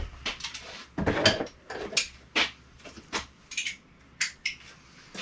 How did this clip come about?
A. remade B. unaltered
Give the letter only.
B